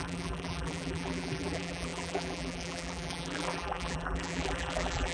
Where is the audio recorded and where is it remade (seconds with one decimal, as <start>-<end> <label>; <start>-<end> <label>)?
0.0-5.1 remade